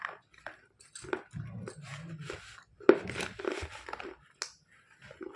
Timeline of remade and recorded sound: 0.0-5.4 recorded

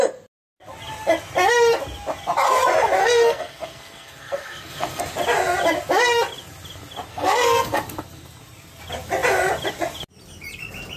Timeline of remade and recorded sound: 0.0-3.0 recorded; 3.0-5.0 remade; 5.0-7.1 recorded; 7.1-7.8 remade; 7.8-11.0 recorded

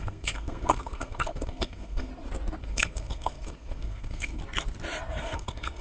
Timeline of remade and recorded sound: 0.0-2.1 remade; 2.1-2.6 recorded; 2.6-4.4 remade; 4.4-5.2 recorded; 5.2-5.8 remade

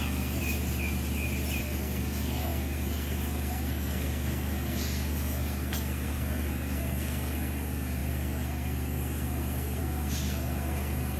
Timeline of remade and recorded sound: 0.0-0.4 remade; 0.4-1.6 recorded; 1.6-11.2 remade

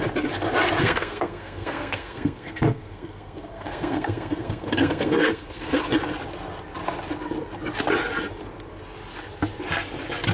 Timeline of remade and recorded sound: 0.0-0.8 recorded; 0.8-5.8 remade; 5.8-10.3 recorded

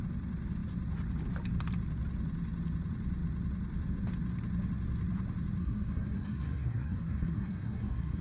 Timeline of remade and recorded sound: 0.0-5.6 recorded; 5.6-8.2 remade

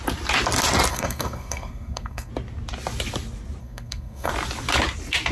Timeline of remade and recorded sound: 0.0-0.9 recorded; 0.9-2.3 remade; 2.3-3.6 recorded; 3.6-4.3 remade; 4.3-5.3 recorded